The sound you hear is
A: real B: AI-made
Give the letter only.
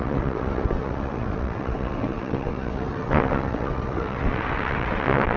B